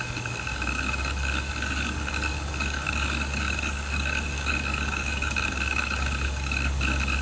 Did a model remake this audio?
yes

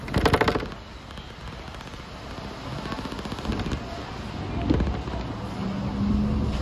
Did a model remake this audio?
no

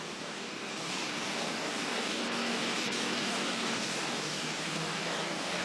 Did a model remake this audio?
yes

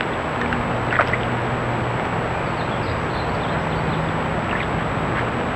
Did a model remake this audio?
no